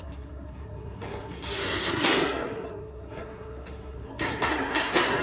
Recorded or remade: remade